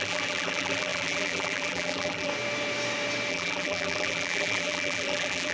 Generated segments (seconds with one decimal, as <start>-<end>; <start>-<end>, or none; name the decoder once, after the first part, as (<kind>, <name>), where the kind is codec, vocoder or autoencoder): 0.0-2.3 (vocoder, BigVGAN v2); 3.3-5.5